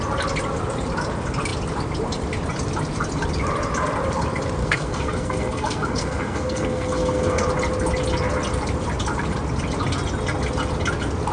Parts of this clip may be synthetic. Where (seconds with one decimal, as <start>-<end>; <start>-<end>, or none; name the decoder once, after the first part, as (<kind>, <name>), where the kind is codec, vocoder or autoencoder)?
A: 4.6-7.5 (codec, SNAC)